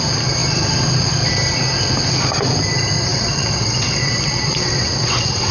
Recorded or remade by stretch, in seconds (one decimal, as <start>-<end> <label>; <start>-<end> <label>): 0.0-3.1 recorded; 3.1-5.5 remade